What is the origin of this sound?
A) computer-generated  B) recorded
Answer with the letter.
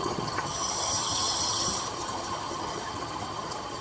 A